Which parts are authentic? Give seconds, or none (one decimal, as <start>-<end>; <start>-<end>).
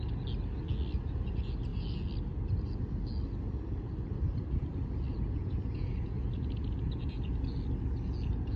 0.0-5.1; 7.3-8.6